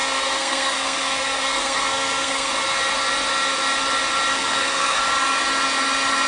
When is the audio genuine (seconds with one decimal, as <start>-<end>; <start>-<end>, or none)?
2.5-4.3; 5.0-6.3